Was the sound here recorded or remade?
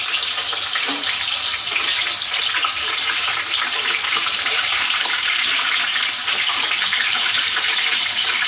remade